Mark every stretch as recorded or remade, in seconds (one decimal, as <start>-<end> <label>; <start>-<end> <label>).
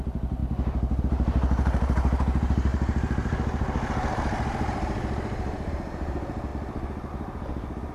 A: 0.0-6.5 remade; 6.5-7.1 recorded; 7.1-7.9 remade